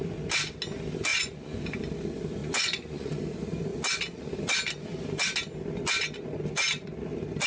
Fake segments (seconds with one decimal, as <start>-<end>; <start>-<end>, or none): 1.1-1.6; 2.4-3.2; 3.7-4.3